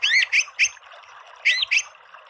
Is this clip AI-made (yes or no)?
no